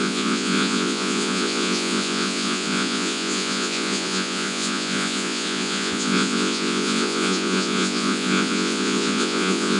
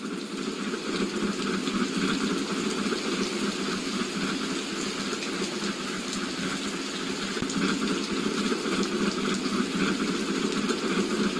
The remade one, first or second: first